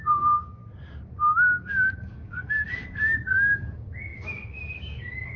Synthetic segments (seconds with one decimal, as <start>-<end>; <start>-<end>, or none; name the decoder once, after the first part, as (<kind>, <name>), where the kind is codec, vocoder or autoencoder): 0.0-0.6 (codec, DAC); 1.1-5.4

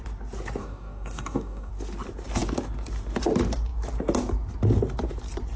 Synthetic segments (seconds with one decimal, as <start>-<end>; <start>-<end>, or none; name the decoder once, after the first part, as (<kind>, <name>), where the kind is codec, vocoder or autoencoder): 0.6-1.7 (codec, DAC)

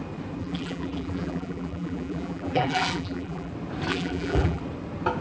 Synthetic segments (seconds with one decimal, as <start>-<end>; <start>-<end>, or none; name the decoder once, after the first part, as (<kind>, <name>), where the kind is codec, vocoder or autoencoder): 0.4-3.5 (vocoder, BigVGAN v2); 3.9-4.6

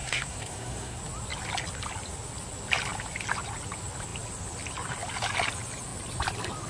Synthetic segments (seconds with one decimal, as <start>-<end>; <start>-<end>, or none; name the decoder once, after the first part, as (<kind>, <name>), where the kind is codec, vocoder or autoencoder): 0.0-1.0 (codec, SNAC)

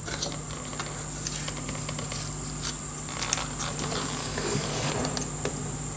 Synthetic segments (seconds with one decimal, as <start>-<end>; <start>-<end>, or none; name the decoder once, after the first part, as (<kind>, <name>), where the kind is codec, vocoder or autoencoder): 4.2-4.9 (codec, DAC)

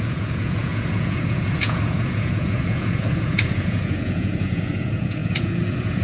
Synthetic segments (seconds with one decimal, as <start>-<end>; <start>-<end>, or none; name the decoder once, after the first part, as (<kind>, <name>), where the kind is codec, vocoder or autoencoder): 0.0-6.0 (vocoder, Vocos)